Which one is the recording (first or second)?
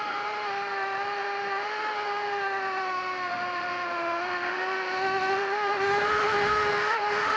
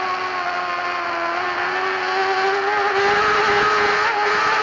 second